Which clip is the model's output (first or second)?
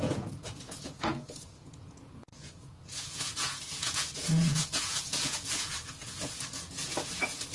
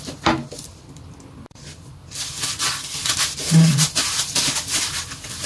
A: first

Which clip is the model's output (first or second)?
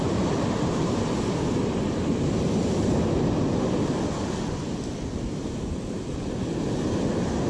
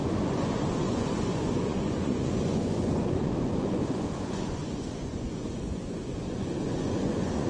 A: second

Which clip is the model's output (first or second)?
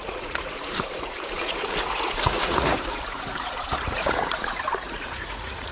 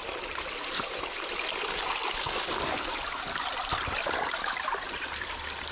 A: first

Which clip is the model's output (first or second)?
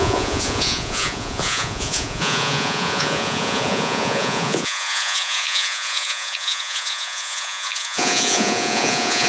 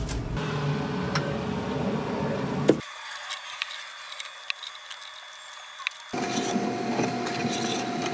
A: first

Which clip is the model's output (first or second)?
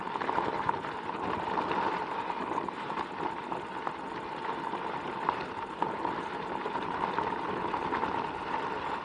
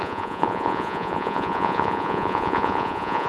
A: second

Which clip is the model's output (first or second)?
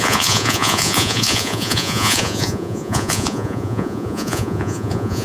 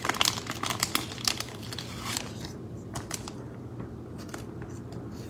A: first